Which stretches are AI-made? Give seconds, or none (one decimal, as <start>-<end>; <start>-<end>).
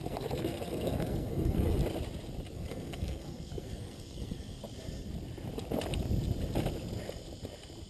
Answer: 0.0-1.8; 2.5-4.6